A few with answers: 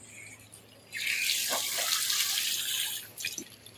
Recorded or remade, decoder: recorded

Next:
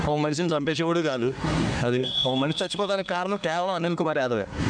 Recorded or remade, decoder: remade, codec, SNAC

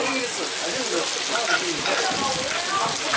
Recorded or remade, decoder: recorded